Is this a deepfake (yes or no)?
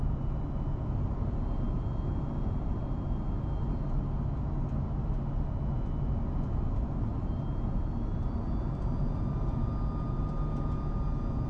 no